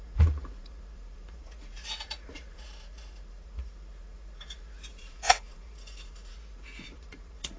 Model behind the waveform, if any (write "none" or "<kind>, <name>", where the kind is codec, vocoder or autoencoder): vocoder, Vocos